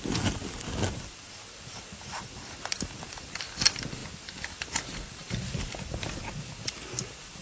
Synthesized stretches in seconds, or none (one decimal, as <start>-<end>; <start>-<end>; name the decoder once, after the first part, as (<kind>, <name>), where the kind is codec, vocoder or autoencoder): none